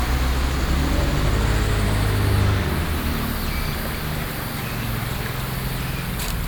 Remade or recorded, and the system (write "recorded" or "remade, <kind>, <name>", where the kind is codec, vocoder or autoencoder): recorded